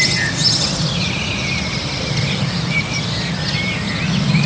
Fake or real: real